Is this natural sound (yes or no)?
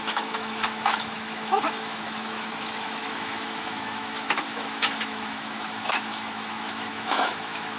no